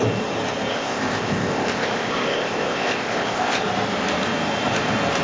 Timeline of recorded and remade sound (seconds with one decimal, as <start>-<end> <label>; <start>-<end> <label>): 0.0-0.7 recorded; 0.7-3.6 remade; 3.6-5.2 recorded